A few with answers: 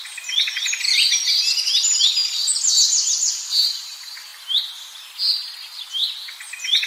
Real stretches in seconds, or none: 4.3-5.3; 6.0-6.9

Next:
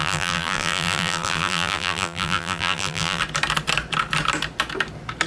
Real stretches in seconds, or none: 3.2-5.3

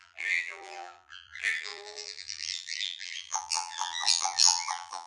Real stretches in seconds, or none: none

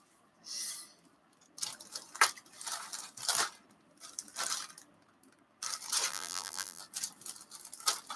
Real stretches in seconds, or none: 0.0-6.1; 6.8-8.2

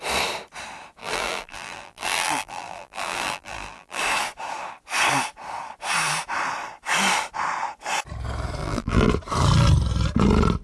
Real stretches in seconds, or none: 0.0-1.0; 4.0-8.6; 9.1-10.6

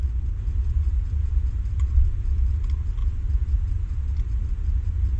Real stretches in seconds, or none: 0.0-1.0; 2.6-5.2

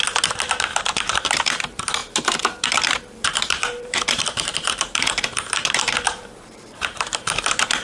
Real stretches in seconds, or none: none

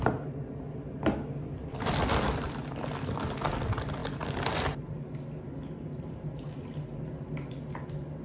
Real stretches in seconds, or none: 0.0-8.2